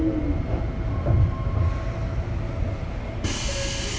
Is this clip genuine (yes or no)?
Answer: yes